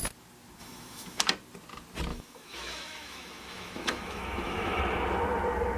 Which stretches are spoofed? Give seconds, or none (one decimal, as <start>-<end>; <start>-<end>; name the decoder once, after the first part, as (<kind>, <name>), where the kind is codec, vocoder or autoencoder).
0.6-1.2 (autoencoder, DAC-VAE); 2.1-4.8